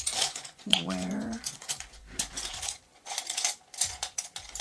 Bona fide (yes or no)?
no